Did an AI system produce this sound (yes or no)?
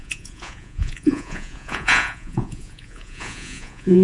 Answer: yes